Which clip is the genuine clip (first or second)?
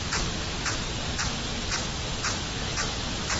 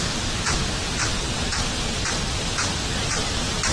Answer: first